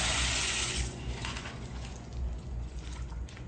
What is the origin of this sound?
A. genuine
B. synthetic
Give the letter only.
B